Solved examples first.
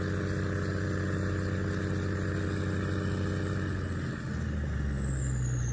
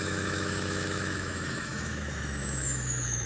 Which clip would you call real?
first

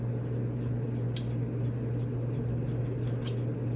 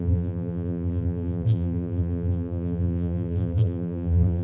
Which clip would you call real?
first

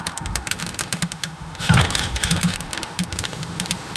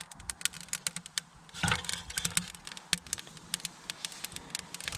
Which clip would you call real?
second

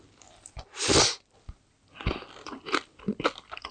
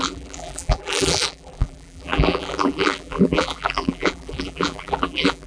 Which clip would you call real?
first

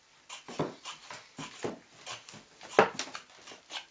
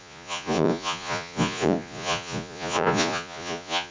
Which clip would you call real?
first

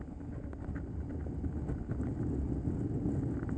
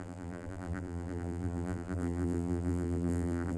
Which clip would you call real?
first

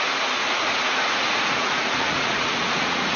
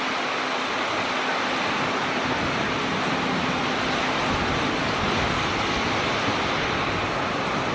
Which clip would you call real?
second